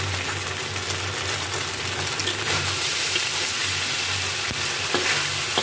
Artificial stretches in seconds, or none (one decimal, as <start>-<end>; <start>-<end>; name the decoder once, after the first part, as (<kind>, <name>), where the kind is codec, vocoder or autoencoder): 2.2-3.6 (vocoder, BigVGAN v2)